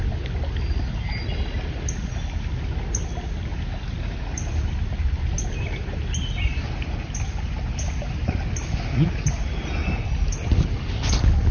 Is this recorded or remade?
recorded